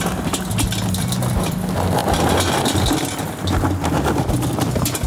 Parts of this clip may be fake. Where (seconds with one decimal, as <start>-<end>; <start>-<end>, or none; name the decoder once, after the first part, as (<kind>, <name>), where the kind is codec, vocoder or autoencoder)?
none